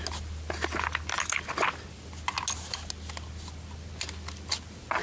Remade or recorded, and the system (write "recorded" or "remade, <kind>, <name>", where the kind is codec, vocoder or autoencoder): recorded